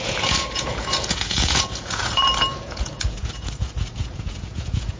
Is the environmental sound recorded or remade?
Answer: remade